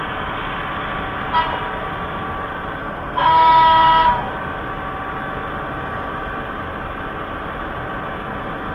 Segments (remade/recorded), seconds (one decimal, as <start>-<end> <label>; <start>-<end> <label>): 0.0-2.8 recorded; 2.8-4.3 remade; 4.3-8.7 recorded